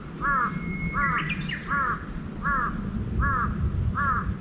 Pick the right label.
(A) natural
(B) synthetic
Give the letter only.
A